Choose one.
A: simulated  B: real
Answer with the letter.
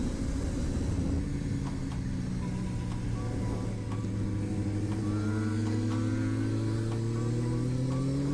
B